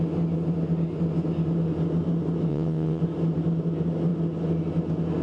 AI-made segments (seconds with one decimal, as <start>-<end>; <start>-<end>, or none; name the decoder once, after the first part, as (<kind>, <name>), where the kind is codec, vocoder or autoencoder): 2.5-3.0 (vocoder, WaveNeXt)